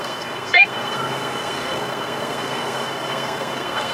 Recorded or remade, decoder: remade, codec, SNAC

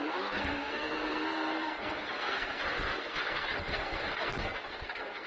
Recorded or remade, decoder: remade, codec, SNAC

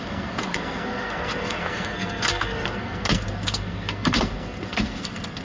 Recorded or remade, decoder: remade, codec, SNAC